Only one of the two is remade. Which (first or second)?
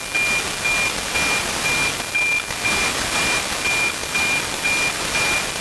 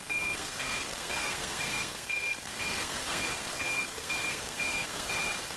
second